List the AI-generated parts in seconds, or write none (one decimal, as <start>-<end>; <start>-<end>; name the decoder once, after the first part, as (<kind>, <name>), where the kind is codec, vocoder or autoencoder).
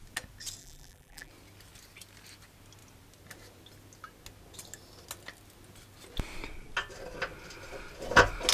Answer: 0.6-1.3 (vocoder, BigVGAN v2)